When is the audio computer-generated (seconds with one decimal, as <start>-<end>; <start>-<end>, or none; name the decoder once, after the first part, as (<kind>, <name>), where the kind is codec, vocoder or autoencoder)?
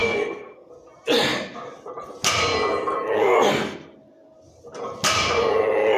0.0-0.7 (codec, SNAC)